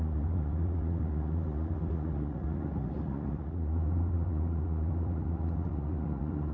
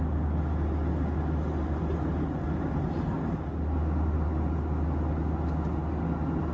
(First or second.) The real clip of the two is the second